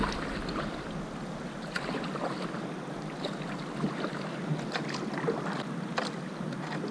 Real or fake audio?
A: real